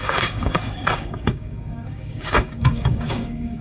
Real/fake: fake